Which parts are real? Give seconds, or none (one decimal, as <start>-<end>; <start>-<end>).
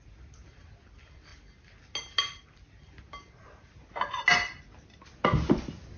0.0-6.0